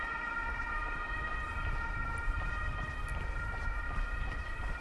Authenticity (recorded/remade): recorded